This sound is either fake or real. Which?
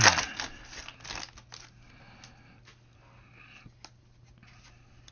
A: real